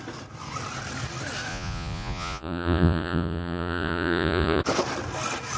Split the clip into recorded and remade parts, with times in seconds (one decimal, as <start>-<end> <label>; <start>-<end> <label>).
0.0-1.5 recorded; 1.5-4.6 remade; 4.6-5.6 recorded